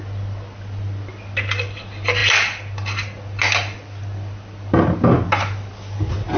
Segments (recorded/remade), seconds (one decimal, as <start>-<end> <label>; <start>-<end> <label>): 0.0-6.4 recorded